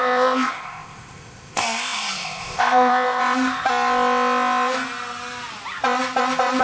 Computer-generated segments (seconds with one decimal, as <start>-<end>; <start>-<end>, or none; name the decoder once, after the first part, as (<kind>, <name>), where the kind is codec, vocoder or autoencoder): 0.0-3.2 (codec, ZipCodec)